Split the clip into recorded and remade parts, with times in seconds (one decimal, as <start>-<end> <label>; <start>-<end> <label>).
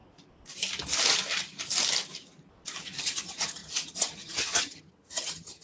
0.0-3.0 recorded; 3.0-5.6 remade